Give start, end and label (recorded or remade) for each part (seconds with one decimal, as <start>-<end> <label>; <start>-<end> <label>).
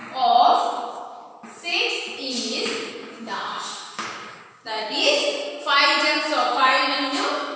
0.0-0.6 recorded; 0.6-1.3 remade; 1.3-2.9 recorded; 2.9-5.2 remade; 5.2-6.5 recorded; 6.5-7.6 remade